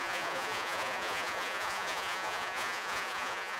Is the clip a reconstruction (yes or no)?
yes